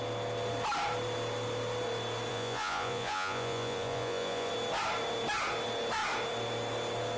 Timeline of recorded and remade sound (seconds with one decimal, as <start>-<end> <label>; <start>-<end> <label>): 0.0-2.3 recorded; 2.3-4.5 remade; 4.5-7.2 recorded